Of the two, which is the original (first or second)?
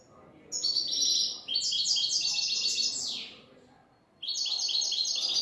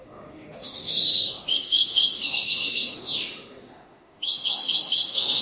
first